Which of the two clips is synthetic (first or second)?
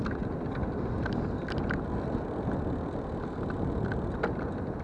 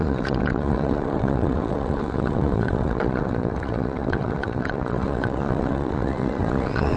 second